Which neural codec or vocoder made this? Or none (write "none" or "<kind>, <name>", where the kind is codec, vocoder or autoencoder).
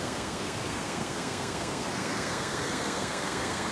codec, SNAC